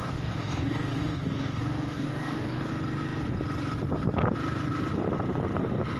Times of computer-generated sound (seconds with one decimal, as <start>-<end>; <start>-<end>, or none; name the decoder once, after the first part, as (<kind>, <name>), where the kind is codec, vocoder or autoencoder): 0.0-2.7 (codec, DAC)